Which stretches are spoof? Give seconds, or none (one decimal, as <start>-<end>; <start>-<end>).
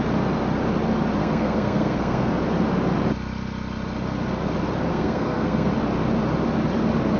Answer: 1.2-2.3; 4.9-5.7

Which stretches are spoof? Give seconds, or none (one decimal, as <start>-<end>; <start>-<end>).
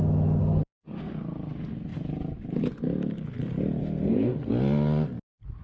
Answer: 0.4-1.1; 3.8-4.5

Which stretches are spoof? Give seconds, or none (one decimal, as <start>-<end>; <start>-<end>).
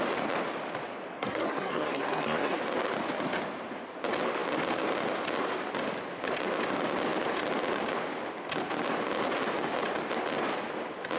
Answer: 1.2-2.6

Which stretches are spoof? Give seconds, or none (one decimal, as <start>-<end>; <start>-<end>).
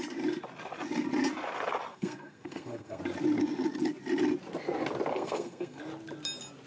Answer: 1.9-3.0; 5.1-5.8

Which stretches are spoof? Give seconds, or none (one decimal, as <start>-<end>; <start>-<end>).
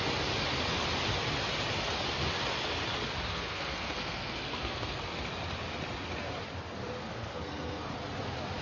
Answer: 3.3-5.0; 7.0-7.9